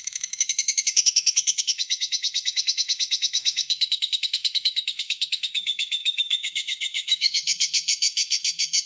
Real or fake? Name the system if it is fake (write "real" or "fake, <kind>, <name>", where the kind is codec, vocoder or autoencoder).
fake, autoencoder, DAC-VAE